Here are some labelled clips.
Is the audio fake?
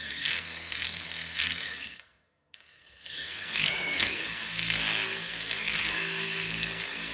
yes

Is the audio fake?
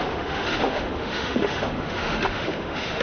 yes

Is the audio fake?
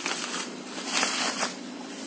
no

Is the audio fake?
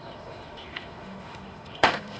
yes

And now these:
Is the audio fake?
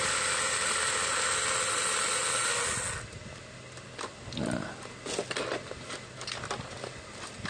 no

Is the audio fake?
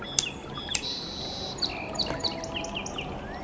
no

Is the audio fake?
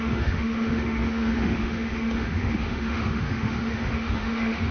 yes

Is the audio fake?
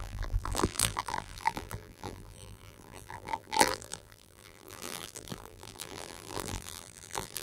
yes